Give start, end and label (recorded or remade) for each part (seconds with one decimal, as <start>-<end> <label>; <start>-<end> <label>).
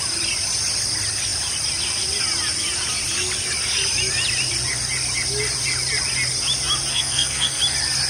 0.0-6.9 recorded; 6.9-7.6 remade; 7.6-8.1 recorded